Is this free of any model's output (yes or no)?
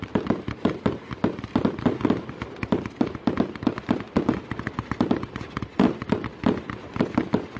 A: yes